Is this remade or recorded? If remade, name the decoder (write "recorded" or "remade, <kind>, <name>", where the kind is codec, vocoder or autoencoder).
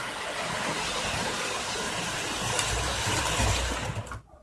recorded